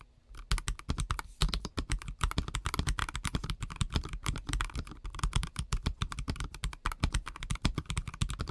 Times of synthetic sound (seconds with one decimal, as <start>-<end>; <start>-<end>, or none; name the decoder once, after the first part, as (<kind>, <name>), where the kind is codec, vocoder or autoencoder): 1.4-1.9 (vocoder, BigVGAN v2); 3.0-8.1